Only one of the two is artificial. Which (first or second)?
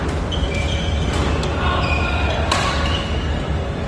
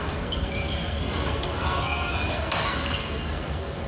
second